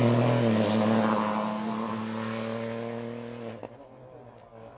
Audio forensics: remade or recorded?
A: recorded